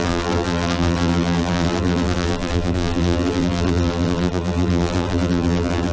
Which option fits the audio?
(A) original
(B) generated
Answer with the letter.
B